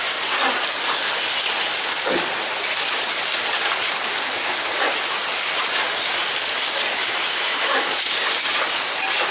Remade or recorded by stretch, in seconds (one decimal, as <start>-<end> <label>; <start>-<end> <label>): 0.0-7.0 recorded; 7.0-7.9 remade; 7.9-9.3 recorded